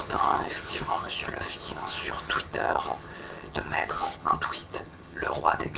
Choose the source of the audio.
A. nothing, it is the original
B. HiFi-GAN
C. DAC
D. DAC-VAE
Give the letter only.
B